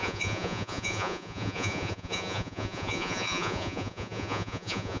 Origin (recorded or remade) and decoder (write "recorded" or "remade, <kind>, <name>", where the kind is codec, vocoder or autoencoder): remade, vocoder, Vocos